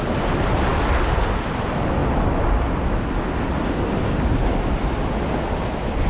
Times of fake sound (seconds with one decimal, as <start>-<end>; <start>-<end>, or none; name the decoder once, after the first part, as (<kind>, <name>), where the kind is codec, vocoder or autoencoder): none